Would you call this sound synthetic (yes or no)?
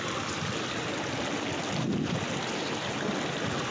no